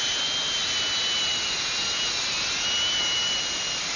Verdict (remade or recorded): recorded